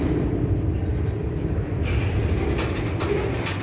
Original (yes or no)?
yes